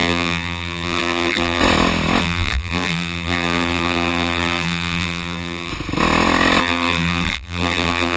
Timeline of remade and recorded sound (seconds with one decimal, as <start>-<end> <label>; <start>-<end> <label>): 0.0-1.6 remade; 1.6-2.2 recorded; 2.2-5.7 remade; 5.7-6.6 recorded; 6.6-8.2 remade